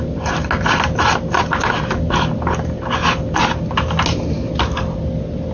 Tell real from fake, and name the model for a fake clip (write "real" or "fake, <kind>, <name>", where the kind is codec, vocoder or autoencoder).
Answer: real